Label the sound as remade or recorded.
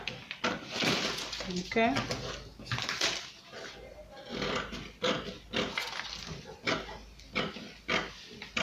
recorded